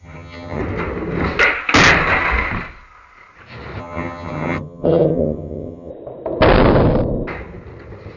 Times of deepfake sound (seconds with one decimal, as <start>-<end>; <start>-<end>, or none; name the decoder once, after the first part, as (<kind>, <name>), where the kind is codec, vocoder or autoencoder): 0.0-0.6 (vocoder, HiFi-GAN); 3.8-5.9